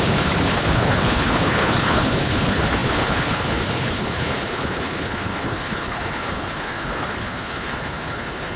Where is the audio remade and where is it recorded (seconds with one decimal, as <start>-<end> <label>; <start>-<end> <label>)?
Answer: 0.0-8.6 remade